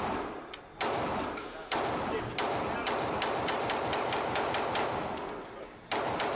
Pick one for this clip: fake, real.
real